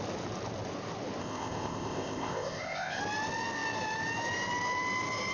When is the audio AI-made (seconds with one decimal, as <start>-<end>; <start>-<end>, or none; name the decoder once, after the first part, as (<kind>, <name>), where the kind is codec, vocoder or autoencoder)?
1.2-3.0 (codec, ZipCodec)